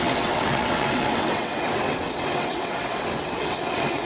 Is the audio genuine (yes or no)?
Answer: no